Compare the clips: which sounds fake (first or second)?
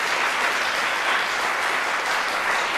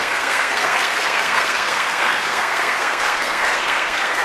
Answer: second